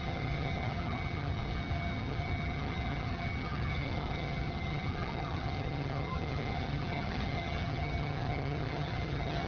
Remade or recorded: remade